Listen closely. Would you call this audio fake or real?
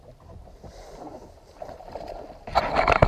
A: fake